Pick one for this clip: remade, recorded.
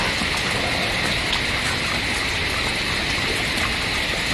recorded